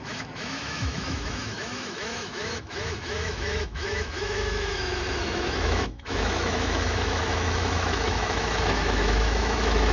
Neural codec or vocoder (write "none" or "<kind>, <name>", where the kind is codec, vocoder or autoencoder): autoencoder, DAC-VAE